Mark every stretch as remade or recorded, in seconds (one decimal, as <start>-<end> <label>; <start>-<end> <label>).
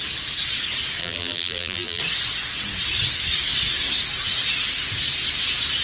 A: 0.0-1.0 recorded; 1.0-2.0 remade; 2.0-5.8 recorded